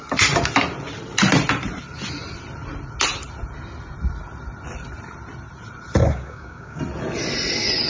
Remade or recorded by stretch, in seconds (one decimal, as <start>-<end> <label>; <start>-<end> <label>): 0.0-6.0 recorded; 6.0-6.8 remade; 6.8-7.9 recorded